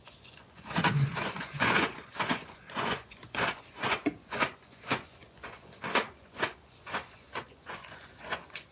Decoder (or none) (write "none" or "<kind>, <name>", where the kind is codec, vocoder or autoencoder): vocoder, Vocos